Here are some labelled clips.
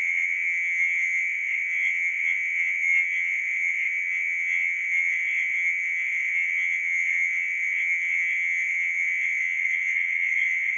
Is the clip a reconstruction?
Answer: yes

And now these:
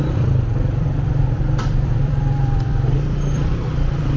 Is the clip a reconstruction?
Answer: yes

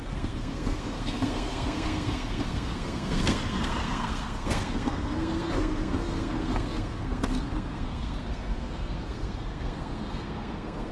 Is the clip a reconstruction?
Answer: yes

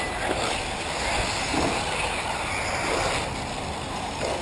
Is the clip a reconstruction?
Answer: no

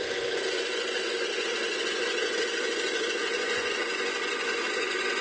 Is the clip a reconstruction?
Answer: yes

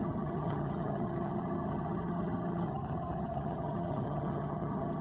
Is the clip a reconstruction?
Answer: yes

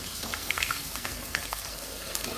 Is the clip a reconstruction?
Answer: yes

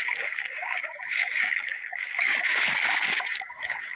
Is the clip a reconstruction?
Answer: yes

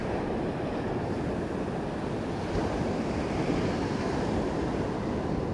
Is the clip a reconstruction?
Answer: no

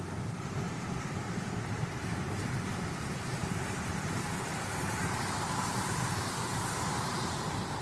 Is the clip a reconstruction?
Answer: yes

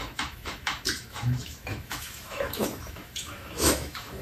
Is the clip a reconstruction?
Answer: yes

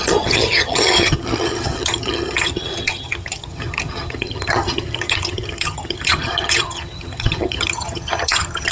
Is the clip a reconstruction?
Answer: yes